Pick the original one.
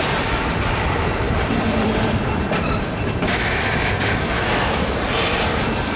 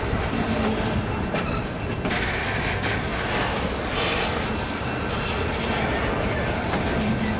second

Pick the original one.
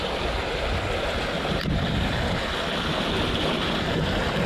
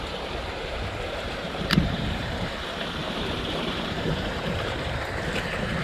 first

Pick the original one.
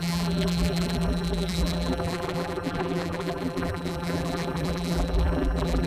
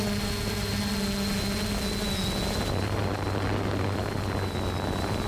second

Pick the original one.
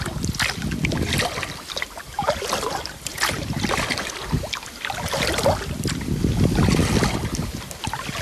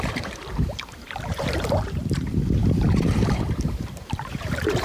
first